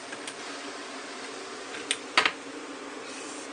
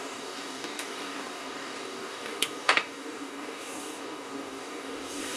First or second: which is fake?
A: second